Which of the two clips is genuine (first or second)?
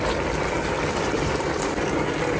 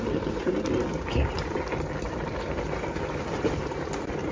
first